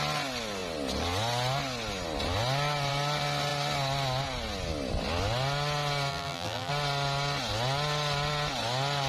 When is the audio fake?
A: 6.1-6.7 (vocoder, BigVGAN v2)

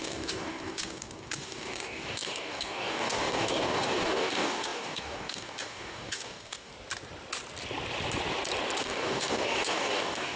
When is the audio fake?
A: 0.0-6.7 (codec, DAC); 8.8-10.4

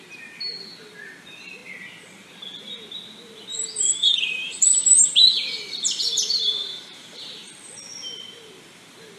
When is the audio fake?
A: 3.9-7.5 (vocoder, BigVGAN v2)

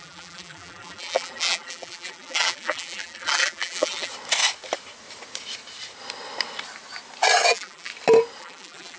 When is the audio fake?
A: 0.0-4.1 (vocoder, BigVGAN v2); 7.5-7.9; 8.4-9.0

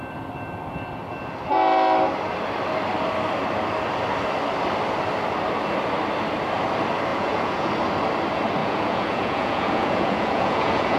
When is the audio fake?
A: 7.1-7.7 (vocoder, Vocos); 8.6-11.0

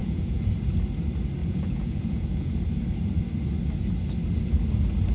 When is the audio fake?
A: 0.0-0.5 (vocoder, Vocos); 1.4-2.5

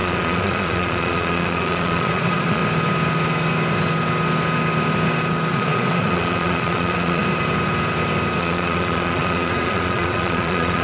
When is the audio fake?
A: 0.0-2.6 (vocoder, Vocos); 5.5-7.2; 8.4-10.8

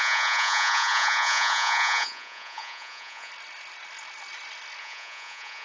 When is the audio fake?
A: 0.0-3.3 (vocoder, Vocos); 4.8-5.6